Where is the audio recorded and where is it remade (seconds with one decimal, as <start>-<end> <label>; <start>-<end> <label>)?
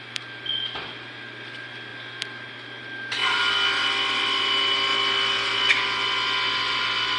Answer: 0.0-1.9 remade; 1.9-2.8 recorded; 2.8-4.9 remade; 4.9-5.7 recorded; 5.7-7.2 remade